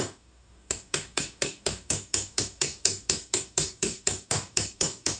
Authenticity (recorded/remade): remade